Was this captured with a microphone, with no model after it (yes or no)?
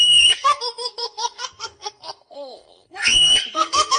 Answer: no